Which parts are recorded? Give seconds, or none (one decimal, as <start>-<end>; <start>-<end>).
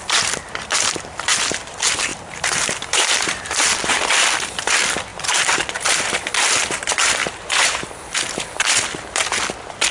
0.0-2.1; 4.0-5.1; 5.6-7.2; 7.9-9.9